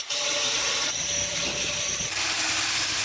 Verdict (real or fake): fake